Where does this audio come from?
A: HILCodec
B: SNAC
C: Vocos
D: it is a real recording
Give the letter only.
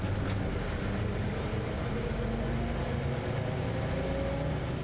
D